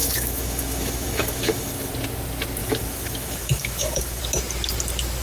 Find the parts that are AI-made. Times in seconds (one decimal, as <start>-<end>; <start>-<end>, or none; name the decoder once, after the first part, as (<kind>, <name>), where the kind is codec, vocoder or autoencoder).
0.0-1.9 (autoencoder, DAC-VAE); 2.6-4.2